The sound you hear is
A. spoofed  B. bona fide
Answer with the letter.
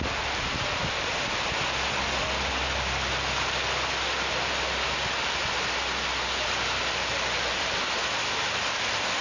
B